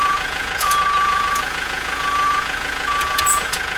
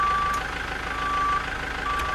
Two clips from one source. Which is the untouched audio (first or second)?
second